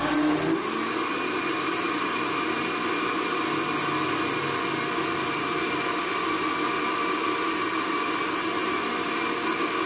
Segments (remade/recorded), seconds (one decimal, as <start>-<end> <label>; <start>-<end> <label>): 0.0-9.9 recorded